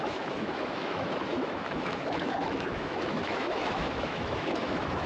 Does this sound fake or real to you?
fake